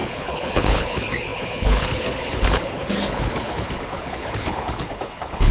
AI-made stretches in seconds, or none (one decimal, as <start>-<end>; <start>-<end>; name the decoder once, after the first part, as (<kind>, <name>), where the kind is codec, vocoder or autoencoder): 0.0-5.5 (codec, HILCodec)